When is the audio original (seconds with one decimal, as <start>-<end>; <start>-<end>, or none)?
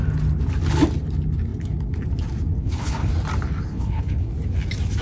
0.0-2.6; 3.1-3.7; 4.3-5.0